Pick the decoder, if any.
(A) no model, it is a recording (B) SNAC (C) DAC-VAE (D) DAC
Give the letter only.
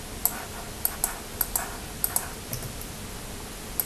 A